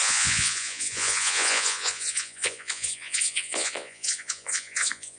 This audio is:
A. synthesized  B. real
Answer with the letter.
A